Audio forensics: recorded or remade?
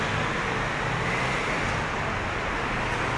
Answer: recorded